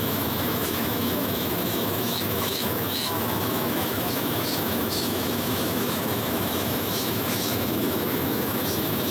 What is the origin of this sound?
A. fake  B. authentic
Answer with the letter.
A